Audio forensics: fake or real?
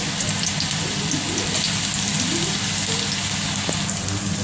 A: real